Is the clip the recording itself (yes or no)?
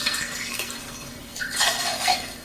no